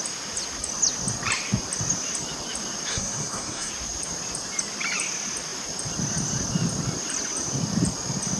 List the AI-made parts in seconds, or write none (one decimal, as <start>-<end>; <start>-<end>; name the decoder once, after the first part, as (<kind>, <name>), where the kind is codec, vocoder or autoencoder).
2.9-3.7 (codec, SNAC)